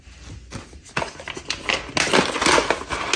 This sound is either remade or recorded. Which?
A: recorded